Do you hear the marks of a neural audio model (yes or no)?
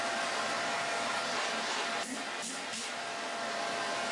no